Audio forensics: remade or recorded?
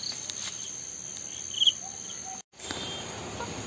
recorded